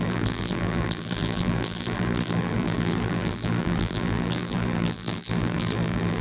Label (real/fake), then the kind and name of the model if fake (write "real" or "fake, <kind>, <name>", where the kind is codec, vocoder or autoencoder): fake, vocoder, BigVGAN v2